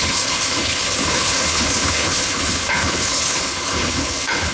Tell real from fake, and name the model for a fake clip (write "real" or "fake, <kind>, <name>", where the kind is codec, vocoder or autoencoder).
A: fake, codec, HILCodec